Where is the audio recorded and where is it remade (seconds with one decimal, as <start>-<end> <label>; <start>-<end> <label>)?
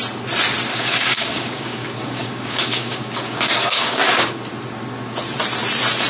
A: 0.0-0.7 recorded; 0.7-4.4 remade; 4.4-6.1 recorded